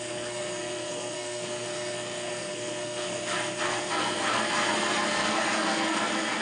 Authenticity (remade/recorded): remade